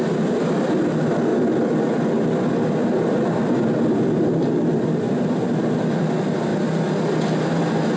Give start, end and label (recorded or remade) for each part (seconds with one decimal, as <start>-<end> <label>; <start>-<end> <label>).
0.0-1.3 recorded; 1.3-2.4 remade; 2.4-2.8 recorded; 2.8-6.1 remade; 6.1-8.0 recorded